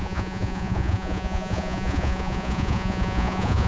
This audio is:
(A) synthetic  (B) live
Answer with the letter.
A